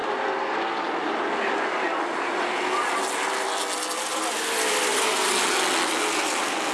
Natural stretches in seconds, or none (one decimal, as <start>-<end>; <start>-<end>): 0.0-6.7